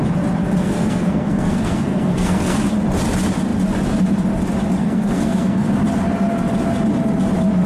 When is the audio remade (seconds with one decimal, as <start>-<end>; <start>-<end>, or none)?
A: 0.4-2.7; 4.8-5.7